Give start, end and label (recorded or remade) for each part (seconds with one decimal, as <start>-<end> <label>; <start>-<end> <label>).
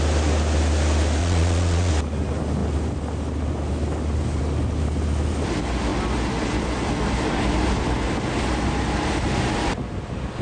0.0-1.2 recorded; 1.2-1.9 remade; 1.9-10.4 recorded